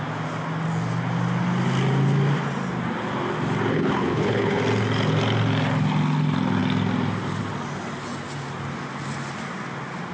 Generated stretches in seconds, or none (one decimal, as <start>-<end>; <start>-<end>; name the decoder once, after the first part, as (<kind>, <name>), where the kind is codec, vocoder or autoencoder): 3.7-4.6 (codec, HILCodec)